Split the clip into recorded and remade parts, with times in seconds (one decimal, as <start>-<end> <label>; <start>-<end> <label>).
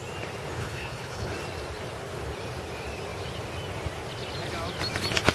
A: 0.0-0.6 recorded; 0.6-1.3 remade; 1.3-5.3 recorded